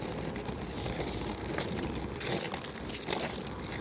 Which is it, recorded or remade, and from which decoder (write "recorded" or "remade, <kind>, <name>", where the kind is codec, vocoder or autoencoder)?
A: recorded